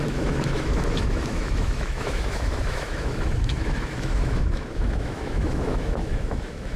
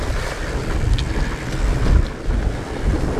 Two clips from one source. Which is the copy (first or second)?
first